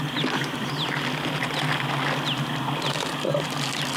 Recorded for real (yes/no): yes